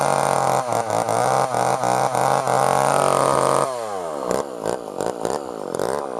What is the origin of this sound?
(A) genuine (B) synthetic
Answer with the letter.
A